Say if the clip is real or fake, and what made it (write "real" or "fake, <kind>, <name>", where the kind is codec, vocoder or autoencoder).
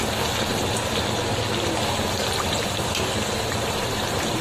real